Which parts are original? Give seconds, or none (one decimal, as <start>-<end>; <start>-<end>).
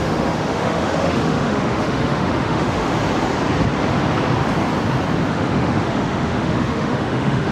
2.9-5.3